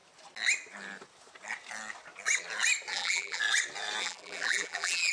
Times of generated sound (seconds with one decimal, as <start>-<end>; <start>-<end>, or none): 2.9-3.4; 4.0-5.1